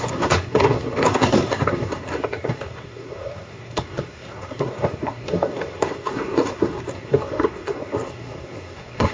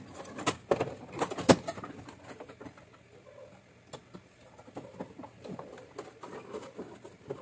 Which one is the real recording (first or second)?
second